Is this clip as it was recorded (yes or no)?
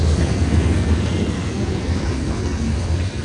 no